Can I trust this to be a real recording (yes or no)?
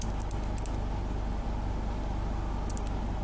yes